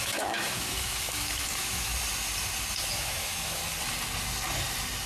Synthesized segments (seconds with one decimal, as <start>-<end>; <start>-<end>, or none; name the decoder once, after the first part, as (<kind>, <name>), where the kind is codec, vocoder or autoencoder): 0.0-1.9 (autoencoder, DAC-VAE); 2.9-3.6